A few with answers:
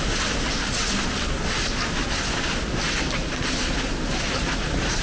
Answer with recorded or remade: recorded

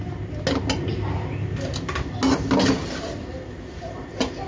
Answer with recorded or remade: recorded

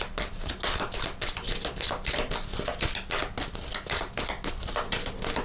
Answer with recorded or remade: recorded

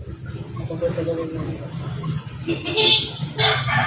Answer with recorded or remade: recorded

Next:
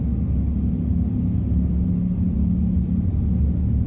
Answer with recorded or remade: recorded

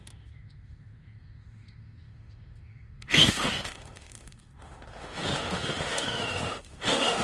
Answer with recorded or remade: remade